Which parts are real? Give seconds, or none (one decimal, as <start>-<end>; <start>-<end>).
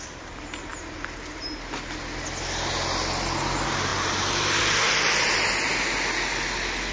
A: 0.0-6.9